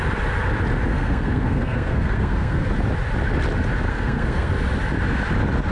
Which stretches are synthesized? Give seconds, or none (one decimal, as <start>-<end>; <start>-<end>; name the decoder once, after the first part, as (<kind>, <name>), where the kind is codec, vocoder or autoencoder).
0.9-2.6 (codec, SNAC); 3.9-4.5